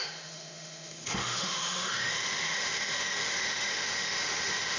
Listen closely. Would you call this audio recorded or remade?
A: remade